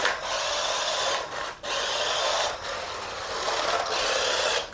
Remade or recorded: recorded